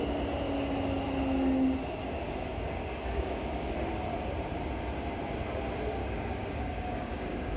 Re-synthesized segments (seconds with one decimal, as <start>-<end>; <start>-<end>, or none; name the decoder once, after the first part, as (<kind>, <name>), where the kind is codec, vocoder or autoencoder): 2.0-3.7 (codec, DAC); 6.0-7.6